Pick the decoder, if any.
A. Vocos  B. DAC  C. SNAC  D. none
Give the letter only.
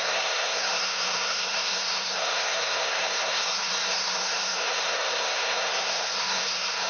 C